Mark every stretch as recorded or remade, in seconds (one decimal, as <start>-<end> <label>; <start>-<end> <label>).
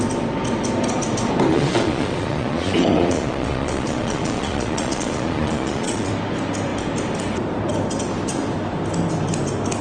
0.0-1.5 recorded; 1.5-6.1 remade; 6.1-9.8 recorded